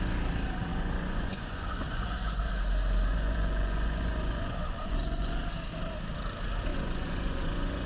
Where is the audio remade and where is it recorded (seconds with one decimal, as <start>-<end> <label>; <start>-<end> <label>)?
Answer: 0.0-0.7 recorded; 0.7-2.5 remade; 2.5-3.1 recorded; 3.1-5.4 remade; 5.4-6.7 recorded; 6.7-7.9 remade